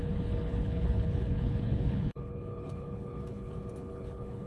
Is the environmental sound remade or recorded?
remade